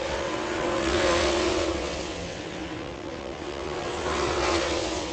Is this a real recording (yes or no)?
no